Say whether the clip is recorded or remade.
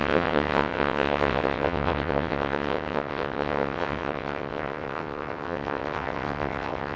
remade